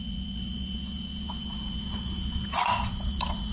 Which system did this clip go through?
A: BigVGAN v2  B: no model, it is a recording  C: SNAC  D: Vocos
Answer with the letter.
D